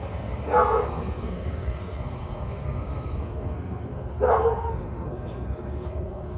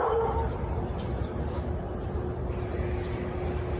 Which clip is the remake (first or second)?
first